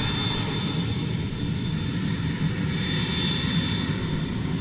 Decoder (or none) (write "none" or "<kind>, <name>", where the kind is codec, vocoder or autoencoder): none